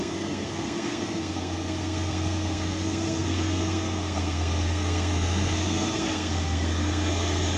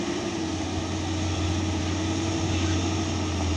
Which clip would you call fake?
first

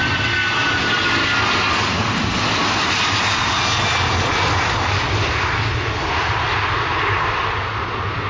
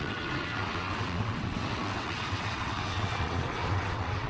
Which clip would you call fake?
second